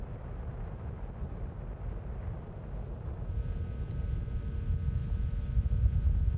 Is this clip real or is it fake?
real